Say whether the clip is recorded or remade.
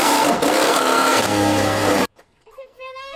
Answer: remade